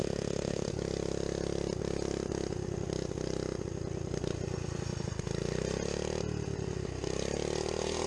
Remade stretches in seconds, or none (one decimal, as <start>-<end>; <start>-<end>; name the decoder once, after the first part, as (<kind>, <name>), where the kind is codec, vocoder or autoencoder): 0.0-0.7 (autoencoder, DAC-VAE)

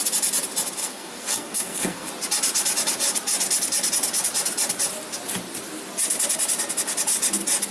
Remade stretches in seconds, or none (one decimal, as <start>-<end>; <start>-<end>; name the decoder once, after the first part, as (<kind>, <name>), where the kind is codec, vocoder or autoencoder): 0.8-2.1 (codec, SNAC)

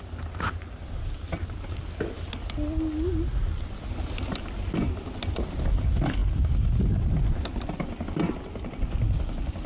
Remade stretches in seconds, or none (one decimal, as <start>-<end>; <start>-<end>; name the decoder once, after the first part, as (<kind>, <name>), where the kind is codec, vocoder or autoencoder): none

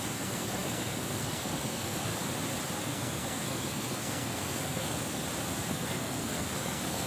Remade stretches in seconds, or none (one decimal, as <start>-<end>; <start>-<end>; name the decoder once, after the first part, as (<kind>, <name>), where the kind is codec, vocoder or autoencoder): 0.0-2.1 (codec, SNAC); 2.8-5.2; 5.7-7.1

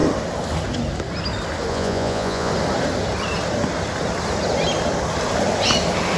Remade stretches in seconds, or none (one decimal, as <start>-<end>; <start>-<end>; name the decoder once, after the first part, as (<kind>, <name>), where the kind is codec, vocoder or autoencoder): 1.7-2.5 (vocoder, Vocos)